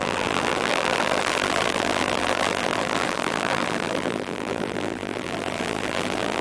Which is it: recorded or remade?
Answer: remade